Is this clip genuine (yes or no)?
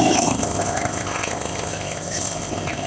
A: no